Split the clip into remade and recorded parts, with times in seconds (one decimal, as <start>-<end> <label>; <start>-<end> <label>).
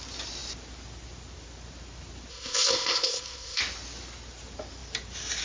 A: 0.0-2.3 recorded; 2.3-3.6 remade; 3.6-5.4 recorded